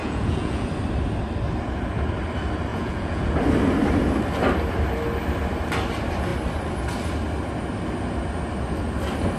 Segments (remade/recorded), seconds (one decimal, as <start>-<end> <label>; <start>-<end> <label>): 0.0-0.7 remade; 0.7-2.7 recorded; 2.7-3.3 remade; 3.3-9.4 recorded